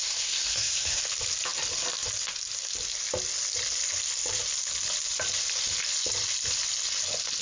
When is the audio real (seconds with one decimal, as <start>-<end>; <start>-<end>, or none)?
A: 1.0-7.4